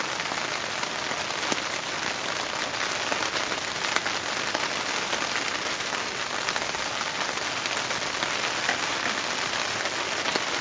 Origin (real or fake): real